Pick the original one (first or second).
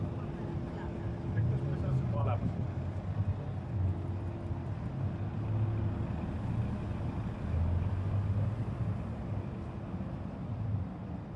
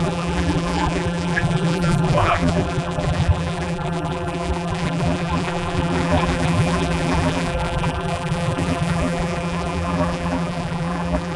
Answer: first